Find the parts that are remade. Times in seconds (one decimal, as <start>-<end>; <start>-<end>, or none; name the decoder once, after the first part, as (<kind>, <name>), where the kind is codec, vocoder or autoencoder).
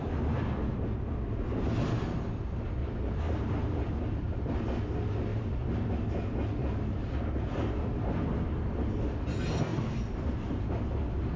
2.8-4.5 (vocoder, BigVGAN v2); 5.3-5.9; 6.6-7.3; 9.7-10.7